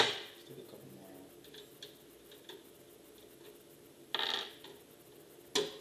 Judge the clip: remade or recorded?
recorded